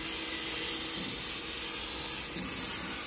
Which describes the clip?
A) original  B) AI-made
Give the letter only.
A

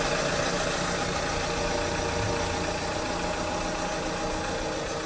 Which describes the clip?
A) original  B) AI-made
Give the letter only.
A